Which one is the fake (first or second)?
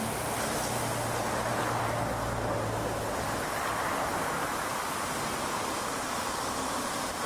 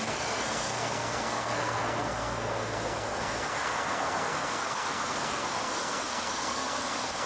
second